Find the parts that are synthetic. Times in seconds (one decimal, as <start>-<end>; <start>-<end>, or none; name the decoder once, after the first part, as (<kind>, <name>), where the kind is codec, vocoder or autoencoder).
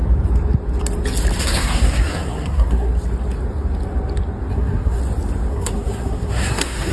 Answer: 1.4-2.9 (codec, SNAC); 4.5-5.0; 5.5-6.9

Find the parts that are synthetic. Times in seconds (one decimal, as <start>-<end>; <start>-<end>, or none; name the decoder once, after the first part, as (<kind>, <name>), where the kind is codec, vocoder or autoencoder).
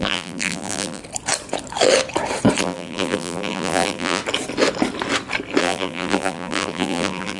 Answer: 0.0-1.0 (vocoder, BigVGAN v2); 2.6-4.2; 5.6-7.4